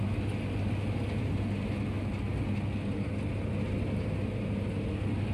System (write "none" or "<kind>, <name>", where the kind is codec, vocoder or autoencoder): none